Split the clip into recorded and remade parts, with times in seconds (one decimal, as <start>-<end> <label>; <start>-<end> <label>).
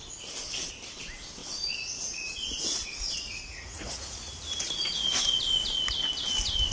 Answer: 0.0-1.4 recorded; 1.4-5.4 remade; 5.4-6.7 recorded